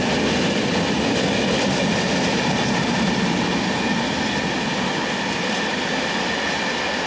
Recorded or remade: recorded